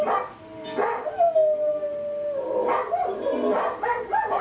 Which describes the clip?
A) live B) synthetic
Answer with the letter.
A